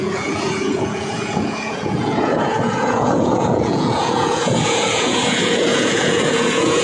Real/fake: fake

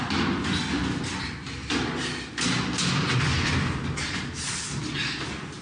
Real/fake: real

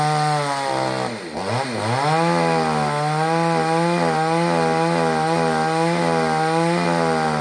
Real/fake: real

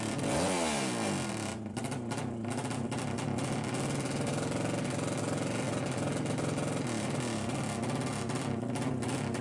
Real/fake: real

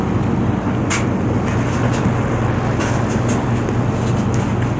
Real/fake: real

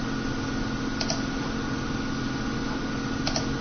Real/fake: real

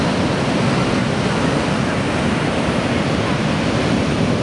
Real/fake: real